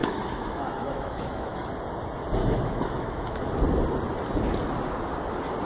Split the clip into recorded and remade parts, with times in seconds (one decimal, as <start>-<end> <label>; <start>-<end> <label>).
0.0-1.7 remade; 1.7-2.4 recorded; 2.4-3.5 remade; 3.5-5.7 recorded